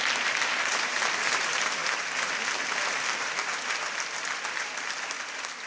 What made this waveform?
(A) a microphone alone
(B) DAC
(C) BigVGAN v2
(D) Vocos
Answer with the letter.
A